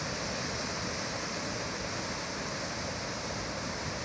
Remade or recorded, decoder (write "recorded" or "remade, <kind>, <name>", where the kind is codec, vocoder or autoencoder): recorded